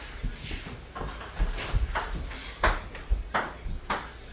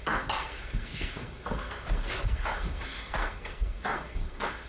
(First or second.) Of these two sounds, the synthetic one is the second